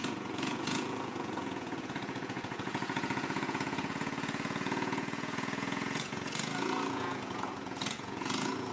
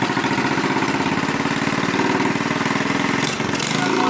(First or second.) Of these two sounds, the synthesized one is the first